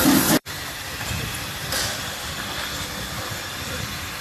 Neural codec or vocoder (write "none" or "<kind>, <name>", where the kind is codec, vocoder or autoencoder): vocoder, BigVGAN v2